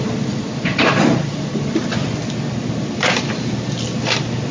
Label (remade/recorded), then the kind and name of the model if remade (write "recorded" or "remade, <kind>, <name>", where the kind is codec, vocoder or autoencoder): recorded